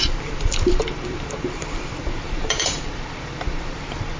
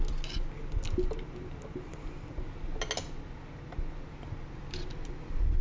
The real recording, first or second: second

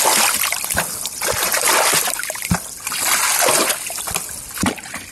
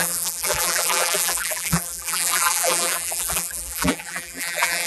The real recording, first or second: first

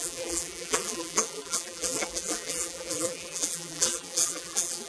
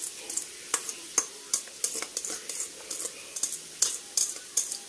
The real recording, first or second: second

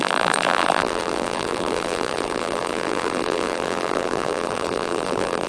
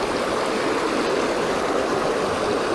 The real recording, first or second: second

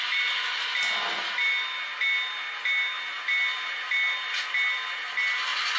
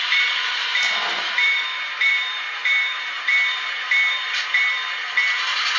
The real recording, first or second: first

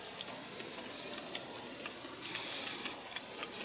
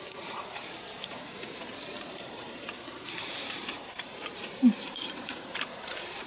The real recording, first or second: first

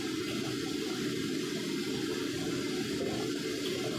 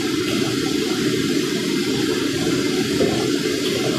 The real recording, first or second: first